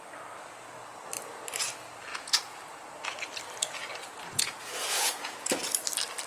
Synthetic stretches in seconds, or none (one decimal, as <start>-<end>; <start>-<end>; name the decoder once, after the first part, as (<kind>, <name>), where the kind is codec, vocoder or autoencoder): 2.1-2.6 (vocoder, Vocos); 4.0-5.6